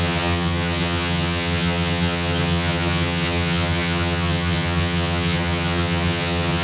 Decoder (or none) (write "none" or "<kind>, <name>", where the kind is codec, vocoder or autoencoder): vocoder, HiFi-GAN